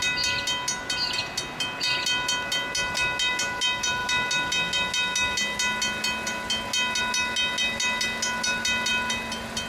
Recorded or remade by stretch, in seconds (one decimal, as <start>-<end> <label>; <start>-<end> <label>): 0.0-9.7 recorded